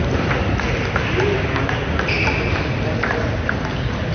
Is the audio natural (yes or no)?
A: yes